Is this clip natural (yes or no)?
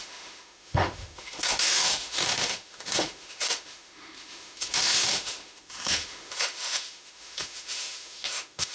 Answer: no